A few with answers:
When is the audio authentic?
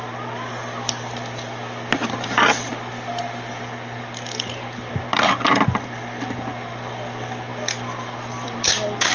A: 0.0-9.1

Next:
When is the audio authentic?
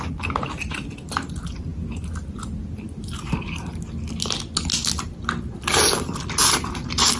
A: 0.0-7.2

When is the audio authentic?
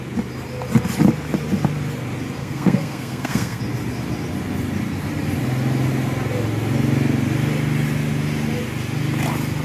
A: 0.0-2.4; 3.6-9.6